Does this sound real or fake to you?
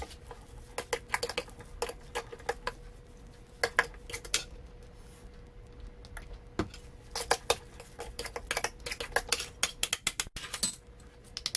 real